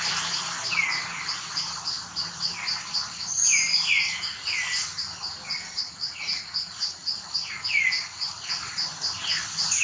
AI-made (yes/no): no